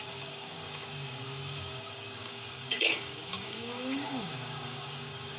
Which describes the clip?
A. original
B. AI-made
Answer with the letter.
B